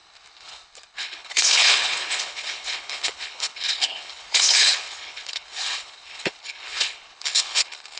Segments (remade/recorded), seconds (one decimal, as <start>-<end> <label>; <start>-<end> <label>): 0.0-8.0 remade